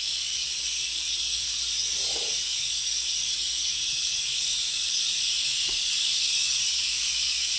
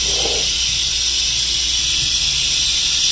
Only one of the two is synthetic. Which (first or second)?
first